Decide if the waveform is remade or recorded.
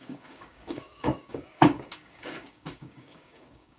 remade